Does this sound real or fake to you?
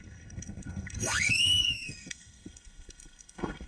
fake